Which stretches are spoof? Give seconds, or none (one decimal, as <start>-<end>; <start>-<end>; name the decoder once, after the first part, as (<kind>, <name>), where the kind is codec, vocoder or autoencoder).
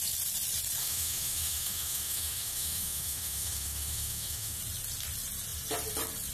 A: 0.8-4.6 (autoencoder, DAC-VAE)